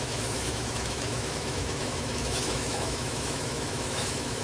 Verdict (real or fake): fake